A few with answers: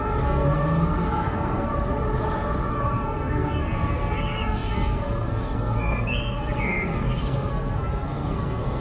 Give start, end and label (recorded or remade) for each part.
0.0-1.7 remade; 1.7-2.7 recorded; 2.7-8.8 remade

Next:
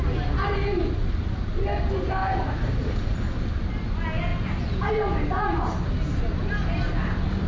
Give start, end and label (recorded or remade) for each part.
0.0-7.5 recorded